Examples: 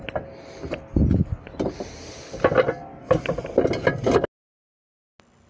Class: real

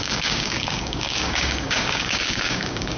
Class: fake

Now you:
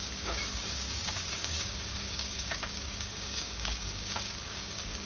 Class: fake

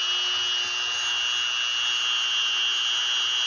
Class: real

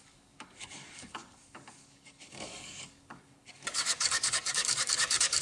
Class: fake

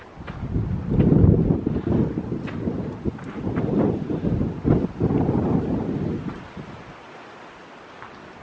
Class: real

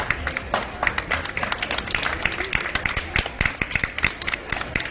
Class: real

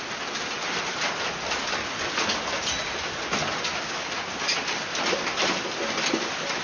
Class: real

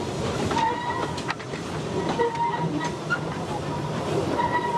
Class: real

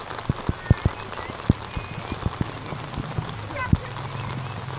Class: real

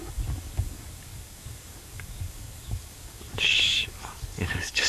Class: fake